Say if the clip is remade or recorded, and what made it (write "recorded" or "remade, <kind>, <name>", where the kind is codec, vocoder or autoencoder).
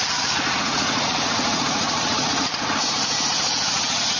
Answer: remade, vocoder, Vocos